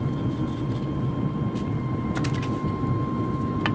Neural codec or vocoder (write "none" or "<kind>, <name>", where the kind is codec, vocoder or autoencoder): none